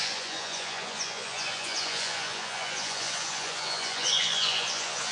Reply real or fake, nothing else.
fake